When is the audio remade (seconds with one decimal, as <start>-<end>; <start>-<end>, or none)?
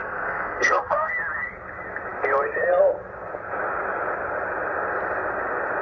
0.0-1.1